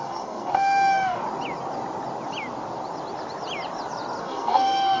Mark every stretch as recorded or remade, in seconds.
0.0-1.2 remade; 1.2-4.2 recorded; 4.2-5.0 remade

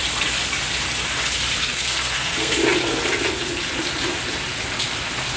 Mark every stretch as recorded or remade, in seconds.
0.0-1.6 recorded; 1.6-2.5 remade; 2.5-5.4 recorded

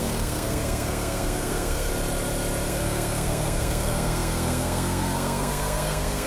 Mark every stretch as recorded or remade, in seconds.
0.0-1.9 remade; 1.9-2.7 recorded; 2.7-6.3 remade

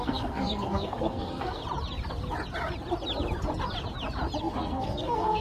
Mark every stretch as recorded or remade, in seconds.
0.0-1.6 remade; 1.6-4.4 recorded; 4.4-5.4 remade

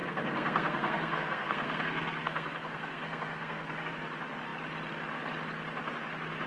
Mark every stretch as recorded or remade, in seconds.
0.0-3.9 remade; 3.9-6.5 recorded